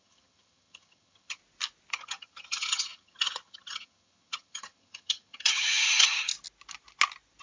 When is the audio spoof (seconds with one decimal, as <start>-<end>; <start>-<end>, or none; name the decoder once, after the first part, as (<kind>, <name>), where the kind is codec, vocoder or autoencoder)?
0.0-1.4 (vocoder, HiFi-GAN); 1.9-6.3